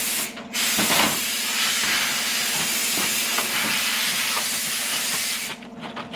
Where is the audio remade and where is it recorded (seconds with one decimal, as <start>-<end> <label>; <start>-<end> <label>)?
0.0-6.2 recorded